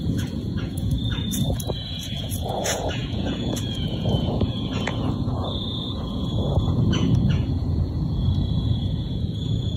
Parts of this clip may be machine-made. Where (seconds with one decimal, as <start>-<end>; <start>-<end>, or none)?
0.0-9.8